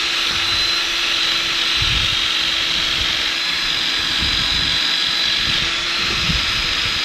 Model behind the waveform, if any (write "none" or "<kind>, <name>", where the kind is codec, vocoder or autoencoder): none